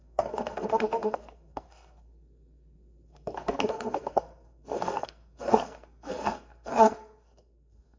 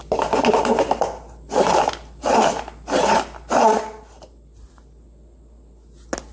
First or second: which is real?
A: second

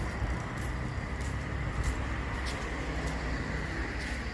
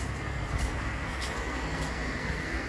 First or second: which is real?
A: first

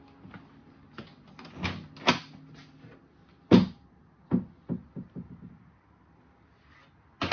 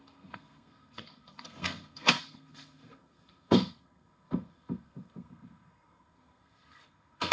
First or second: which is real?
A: first